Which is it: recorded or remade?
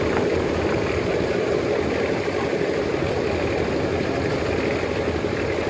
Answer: recorded